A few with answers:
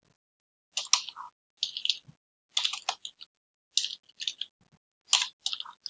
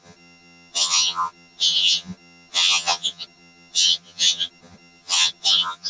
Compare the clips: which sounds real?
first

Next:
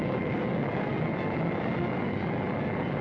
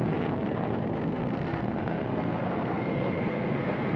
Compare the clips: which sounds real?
first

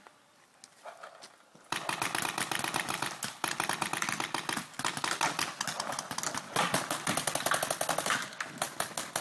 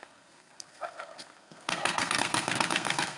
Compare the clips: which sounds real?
first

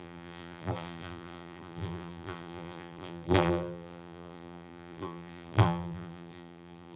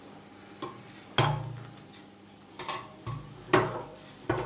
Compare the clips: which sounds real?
second